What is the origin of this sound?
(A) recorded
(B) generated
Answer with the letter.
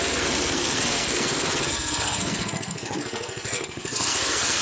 B